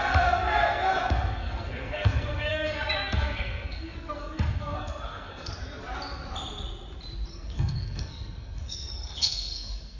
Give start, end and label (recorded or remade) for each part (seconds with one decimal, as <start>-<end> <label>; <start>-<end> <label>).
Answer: 0.0-5.5 remade; 5.5-7.3 recorded; 7.3-10.0 remade